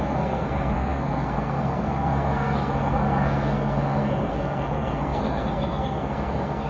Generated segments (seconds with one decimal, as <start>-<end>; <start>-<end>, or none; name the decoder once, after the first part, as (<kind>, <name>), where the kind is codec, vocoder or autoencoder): 0.0-6.7 (codec, SNAC)